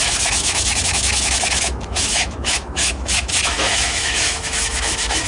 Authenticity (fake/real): fake